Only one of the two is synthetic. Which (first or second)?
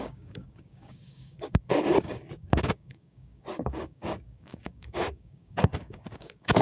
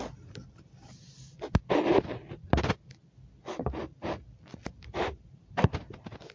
first